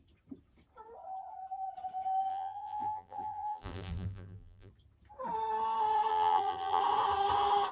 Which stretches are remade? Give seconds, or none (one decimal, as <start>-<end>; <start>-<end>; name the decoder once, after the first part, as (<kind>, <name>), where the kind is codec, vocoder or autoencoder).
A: 2.3-4.7 (vocoder, BigVGAN v2); 6.1-6.8